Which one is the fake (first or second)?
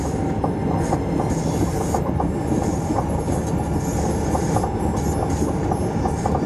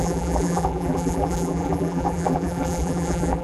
second